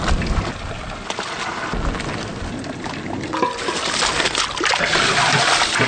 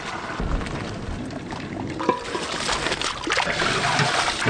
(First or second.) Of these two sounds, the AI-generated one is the second